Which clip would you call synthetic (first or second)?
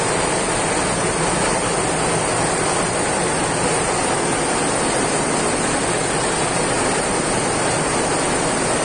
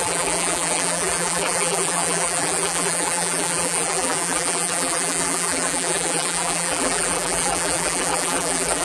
second